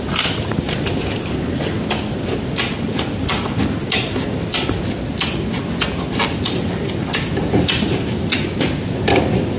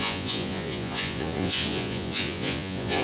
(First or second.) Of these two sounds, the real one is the first